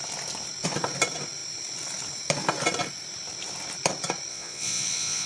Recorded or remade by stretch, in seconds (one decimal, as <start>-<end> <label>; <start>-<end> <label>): 0.0-4.3 recorded; 4.3-5.3 remade

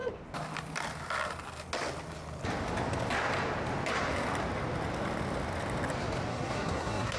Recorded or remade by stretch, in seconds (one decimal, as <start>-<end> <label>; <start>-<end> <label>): 0.0-6.3 recorded; 6.3-7.2 remade

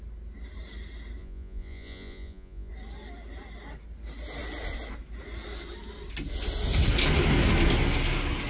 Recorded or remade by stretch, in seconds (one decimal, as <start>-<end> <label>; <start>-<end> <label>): 0.0-1.2 recorded; 1.2-2.7 remade; 2.7-8.5 recorded

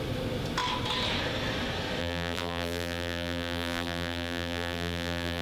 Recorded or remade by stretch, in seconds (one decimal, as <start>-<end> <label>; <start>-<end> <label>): 0.0-2.0 recorded; 2.0-5.4 remade

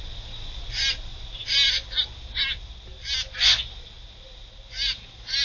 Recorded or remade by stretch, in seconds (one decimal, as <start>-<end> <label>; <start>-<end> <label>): 0.0-5.4 recorded

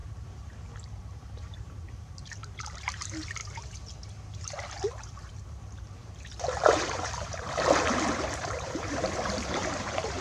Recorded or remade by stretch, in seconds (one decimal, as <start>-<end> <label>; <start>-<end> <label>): 0.0-1.0 recorded; 1.0-3.4 remade; 3.4-5.3 recorded; 5.3-10.2 remade

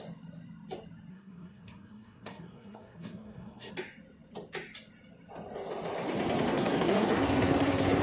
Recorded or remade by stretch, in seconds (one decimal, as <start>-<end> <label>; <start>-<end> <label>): 0.0-1.1 recorded; 1.1-3.7 remade; 3.7-6.5 recorded; 6.5-8.0 remade